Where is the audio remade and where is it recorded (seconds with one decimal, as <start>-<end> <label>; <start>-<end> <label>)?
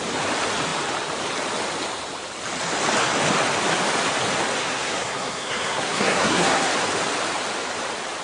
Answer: 0.0-4.6 recorded; 4.6-6.7 remade; 6.7-8.2 recorded